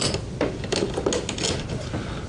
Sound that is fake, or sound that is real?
real